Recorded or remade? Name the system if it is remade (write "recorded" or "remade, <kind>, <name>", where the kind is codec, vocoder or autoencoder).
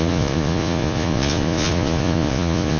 remade, vocoder, Vocos